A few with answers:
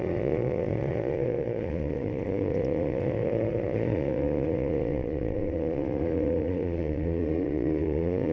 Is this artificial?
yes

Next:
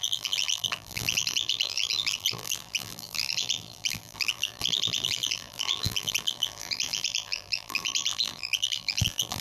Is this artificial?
yes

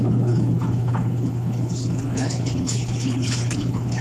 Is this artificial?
yes